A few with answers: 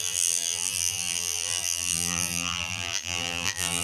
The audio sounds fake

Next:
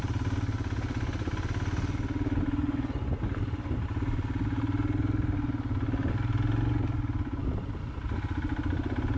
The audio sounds real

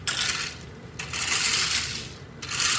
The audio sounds real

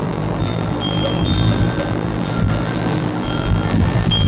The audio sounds fake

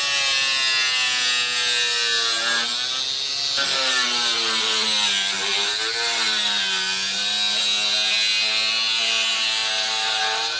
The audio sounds real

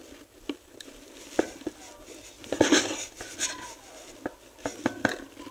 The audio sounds real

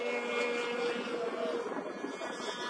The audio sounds real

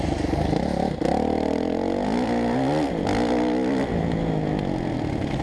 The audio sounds real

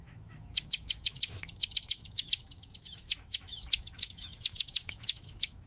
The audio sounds fake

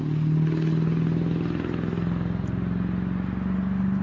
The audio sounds real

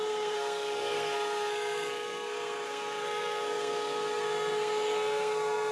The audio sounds fake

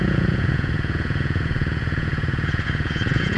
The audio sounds fake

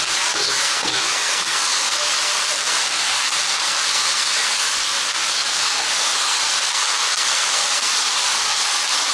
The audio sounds fake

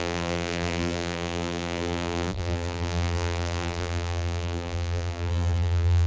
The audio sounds fake